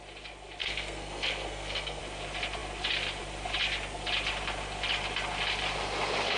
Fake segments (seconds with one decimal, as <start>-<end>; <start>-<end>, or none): 0.6-2.0